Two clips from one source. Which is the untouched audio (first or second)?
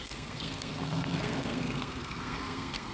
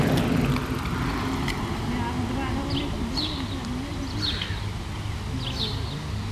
second